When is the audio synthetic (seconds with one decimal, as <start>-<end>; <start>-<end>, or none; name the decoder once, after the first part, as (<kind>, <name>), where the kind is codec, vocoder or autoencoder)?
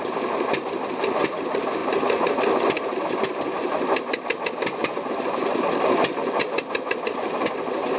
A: none